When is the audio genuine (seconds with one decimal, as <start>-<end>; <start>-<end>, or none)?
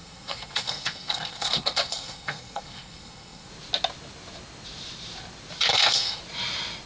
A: 3.5-5.7; 6.2-6.9